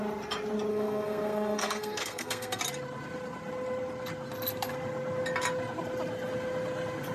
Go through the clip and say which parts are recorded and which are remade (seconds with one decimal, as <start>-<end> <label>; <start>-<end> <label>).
0.0-0.7 recorded; 0.7-2.6 remade; 2.6-7.1 recorded